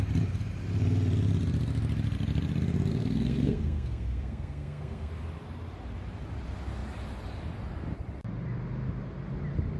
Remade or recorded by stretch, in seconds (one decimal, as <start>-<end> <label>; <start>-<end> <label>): 0.0-2.9 recorded; 2.9-5.1 remade; 5.1-9.8 recorded